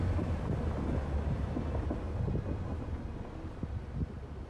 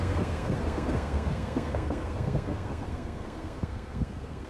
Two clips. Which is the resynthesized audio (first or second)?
second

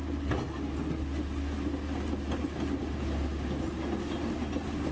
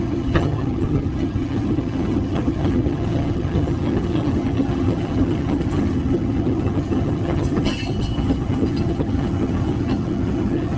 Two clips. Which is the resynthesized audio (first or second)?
second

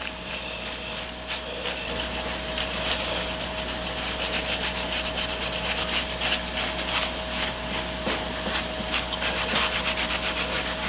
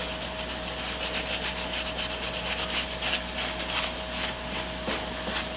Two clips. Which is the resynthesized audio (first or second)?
first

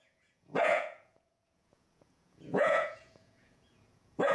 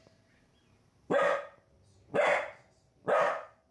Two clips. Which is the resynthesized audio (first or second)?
first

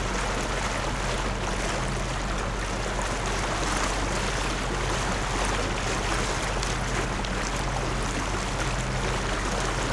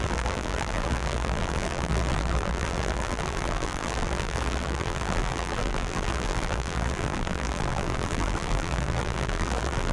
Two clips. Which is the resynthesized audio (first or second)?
second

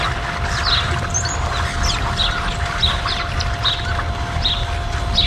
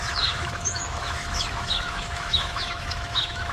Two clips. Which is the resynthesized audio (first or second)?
second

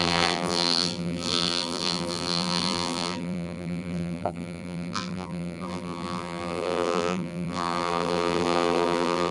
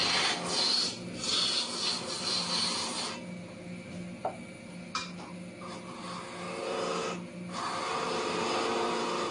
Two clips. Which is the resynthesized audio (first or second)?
first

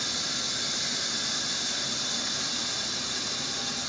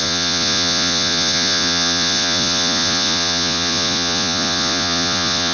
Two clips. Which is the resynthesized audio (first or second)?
second